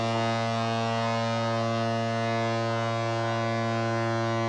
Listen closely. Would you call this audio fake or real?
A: real